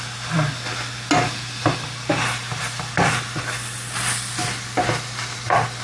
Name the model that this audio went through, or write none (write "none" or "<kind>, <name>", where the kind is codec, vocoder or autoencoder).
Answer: none